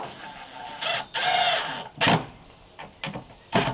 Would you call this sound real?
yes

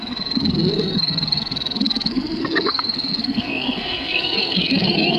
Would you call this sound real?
no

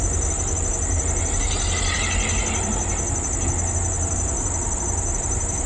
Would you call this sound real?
yes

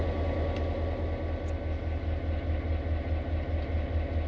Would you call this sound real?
yes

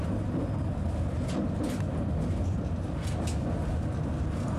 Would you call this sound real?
yes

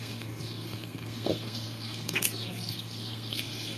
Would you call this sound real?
no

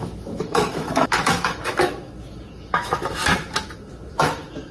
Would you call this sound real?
no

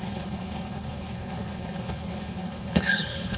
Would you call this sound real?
no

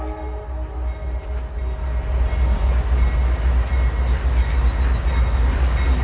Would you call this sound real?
yes